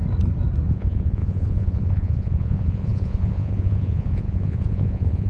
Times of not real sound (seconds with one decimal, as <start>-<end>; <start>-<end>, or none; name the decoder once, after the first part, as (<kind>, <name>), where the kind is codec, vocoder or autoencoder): 0.7-5.3 (vocoder, Vocos)